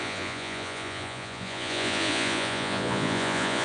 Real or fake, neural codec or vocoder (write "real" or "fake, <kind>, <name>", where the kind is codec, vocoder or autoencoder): fake, vocoder, Vocos